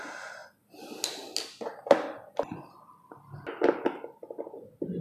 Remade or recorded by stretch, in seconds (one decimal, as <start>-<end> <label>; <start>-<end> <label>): 0.0-5.0 recorded